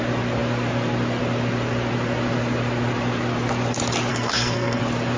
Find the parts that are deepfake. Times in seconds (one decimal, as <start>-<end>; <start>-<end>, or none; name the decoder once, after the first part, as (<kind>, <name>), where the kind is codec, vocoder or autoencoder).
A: 4.1-4.8 (codec, SNAC)

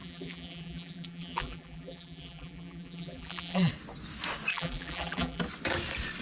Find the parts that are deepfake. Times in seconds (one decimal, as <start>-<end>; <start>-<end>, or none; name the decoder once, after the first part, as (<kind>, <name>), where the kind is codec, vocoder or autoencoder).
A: 0.0-3.7 (vocoder, BigVGAN v2); 4.5-5.4

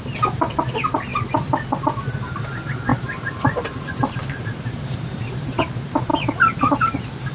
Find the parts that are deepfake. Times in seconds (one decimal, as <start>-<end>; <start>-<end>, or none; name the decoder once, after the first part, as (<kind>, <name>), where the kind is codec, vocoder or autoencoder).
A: 2.9-5.6 (vocoder, BigVGAN v2); 6.1-7.3

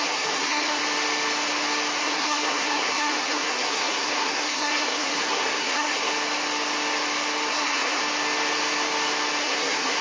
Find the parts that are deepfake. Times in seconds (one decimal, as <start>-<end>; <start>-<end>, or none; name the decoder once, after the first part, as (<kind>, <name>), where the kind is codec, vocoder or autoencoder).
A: 0.0-0.8 (codec, SNAC); 2.0-6.1; 7.5-8.0; 9.4-10.0